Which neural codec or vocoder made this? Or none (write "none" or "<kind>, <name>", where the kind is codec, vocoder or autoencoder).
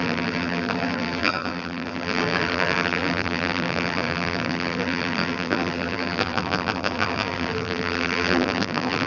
vocoder, BigVGAN v2